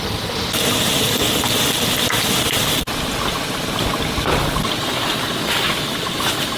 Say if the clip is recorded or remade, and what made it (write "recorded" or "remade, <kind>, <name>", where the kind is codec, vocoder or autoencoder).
recorded